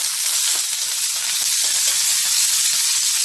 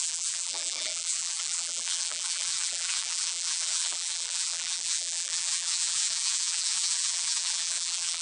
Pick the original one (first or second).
first